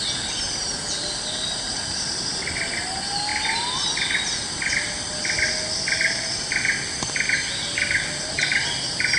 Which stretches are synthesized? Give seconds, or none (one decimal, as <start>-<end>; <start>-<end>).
none